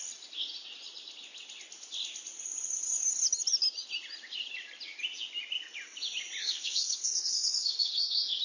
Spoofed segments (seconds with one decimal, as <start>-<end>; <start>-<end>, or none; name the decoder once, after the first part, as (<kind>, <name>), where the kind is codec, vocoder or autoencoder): 6.4-8.4 (codec, SNAC)